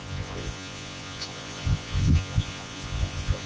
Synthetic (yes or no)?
yes